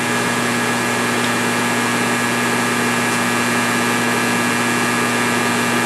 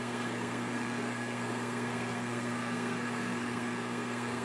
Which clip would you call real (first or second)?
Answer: first